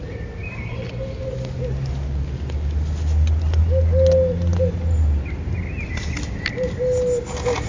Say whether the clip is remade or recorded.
recorded